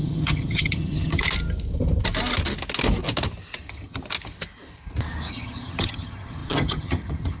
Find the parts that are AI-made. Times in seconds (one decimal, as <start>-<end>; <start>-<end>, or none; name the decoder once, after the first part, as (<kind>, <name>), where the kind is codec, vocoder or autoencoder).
0.0-1.2 (vocoder, HiFi-GAN); 3.6-4.0; 5.3-7.4